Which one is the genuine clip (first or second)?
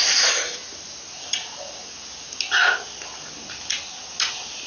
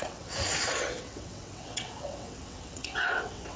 first